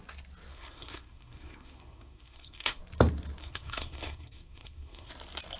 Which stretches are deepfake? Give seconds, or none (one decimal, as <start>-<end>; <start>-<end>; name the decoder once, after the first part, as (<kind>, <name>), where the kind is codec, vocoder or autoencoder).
0.5-2.8 (codec, SNAC); 3.4-5.1

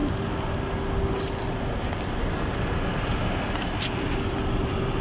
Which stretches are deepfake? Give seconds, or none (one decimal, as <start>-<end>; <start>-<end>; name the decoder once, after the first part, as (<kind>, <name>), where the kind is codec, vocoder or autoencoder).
none

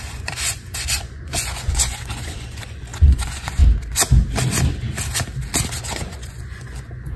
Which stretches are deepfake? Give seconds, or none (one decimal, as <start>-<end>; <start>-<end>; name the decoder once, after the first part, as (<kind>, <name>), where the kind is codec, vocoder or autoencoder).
0.0-3.6 (vocoder, Vocos); 5.8-7.2

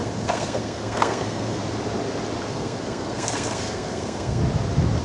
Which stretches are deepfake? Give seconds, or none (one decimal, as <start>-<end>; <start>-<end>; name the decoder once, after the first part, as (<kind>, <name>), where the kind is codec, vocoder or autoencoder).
0.0-1.6 (codec, SNAC); 2.5-4.4

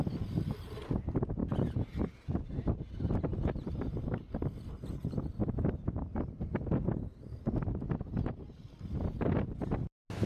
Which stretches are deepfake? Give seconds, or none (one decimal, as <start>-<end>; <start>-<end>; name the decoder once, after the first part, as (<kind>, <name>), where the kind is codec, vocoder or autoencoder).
none